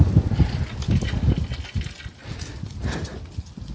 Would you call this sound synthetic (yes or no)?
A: no